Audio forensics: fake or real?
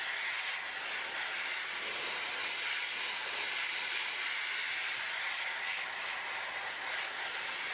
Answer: real